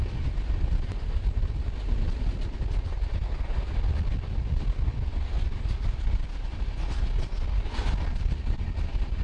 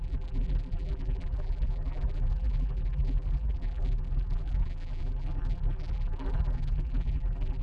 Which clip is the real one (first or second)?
first